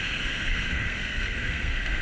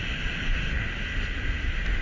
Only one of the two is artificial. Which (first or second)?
first